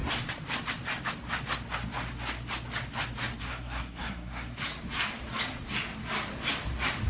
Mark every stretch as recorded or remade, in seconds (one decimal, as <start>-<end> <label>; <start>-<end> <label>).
0.0-3.4 recorded; 3.4-4.6 remade; 4.6-7.1 recorded